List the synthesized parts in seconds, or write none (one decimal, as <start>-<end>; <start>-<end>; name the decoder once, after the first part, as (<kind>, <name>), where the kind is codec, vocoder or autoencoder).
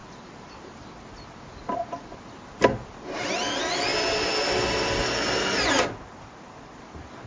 0.0-0.6 (vocoder, BigVGAN v2)